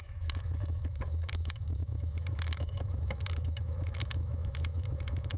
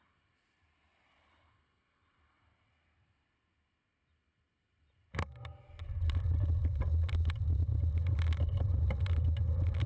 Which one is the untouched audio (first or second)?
second